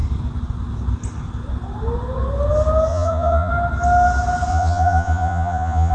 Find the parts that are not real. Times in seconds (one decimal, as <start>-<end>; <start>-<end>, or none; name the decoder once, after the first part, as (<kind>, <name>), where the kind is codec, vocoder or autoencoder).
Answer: 2.9-3.5 (vocoder, Vocos); 4.5-5.9